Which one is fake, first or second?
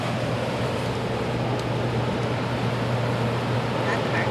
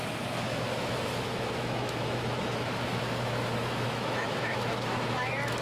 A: second